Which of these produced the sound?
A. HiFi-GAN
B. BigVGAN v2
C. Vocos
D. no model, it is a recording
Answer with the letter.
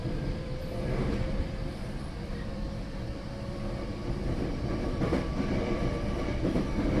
B